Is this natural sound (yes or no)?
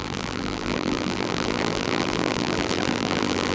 no